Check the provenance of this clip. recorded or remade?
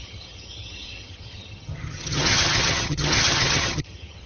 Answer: remade